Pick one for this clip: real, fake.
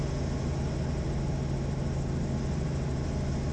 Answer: real